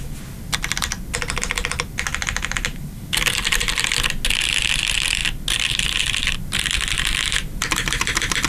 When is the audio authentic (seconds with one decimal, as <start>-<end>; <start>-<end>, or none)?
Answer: 0.0-8.5